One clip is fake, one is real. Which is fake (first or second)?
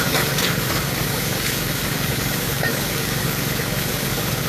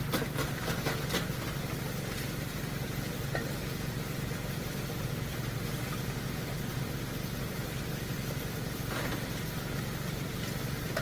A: first